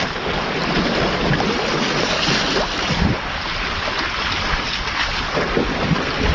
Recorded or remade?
recorded